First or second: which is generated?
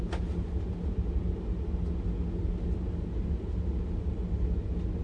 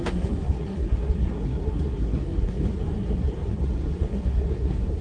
second